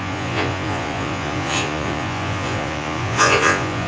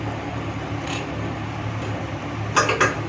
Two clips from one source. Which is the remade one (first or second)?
first